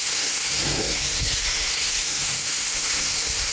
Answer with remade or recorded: remade